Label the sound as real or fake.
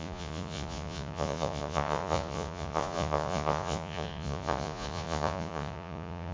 fake